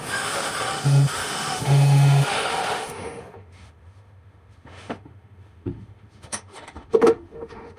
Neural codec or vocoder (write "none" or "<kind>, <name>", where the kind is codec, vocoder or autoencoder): autoencoder, DAC-VAE